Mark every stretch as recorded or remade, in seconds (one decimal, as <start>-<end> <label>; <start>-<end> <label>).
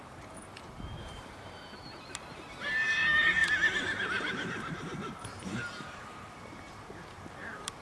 0.0-7.8 remade